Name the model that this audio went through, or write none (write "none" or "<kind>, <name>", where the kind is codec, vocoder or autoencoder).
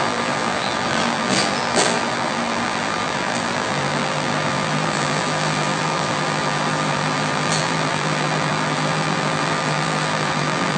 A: vocoder, BigVGAN v2